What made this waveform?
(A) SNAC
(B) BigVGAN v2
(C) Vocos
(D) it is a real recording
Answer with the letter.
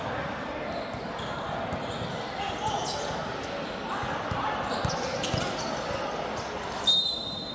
D